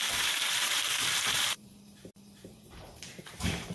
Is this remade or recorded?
remade